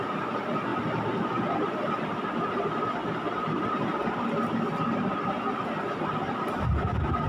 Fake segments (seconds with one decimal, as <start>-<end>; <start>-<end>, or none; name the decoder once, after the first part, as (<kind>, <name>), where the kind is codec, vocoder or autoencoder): none